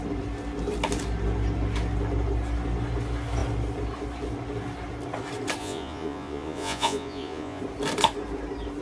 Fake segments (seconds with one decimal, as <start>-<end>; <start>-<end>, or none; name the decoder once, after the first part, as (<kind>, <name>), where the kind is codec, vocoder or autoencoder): 5.6-7.6 (vocoder, Vocos)